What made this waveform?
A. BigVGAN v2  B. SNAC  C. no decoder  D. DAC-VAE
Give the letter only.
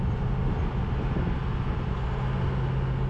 C